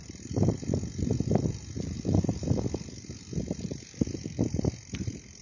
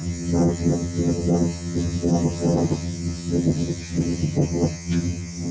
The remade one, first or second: second